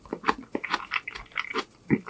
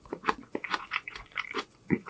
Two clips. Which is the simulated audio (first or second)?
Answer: second